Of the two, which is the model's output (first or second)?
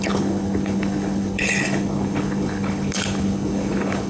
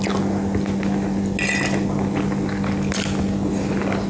first